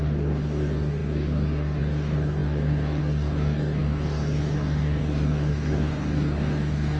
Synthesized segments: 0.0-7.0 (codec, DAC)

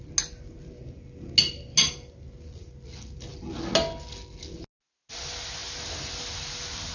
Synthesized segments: none

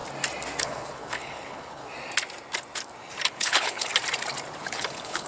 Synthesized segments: 0.6-1.8 (codec, HILCodec); 3.3-3.9; 4.6-5.3